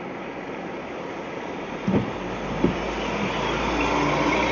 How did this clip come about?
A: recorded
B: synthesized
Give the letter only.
A